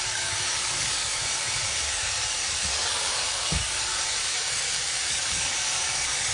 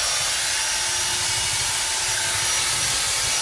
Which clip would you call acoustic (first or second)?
second